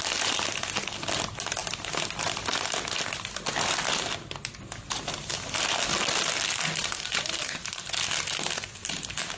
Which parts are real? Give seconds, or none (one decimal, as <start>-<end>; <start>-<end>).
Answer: 0.0-9.4